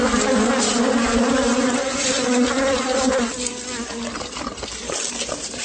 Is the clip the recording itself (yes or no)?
yes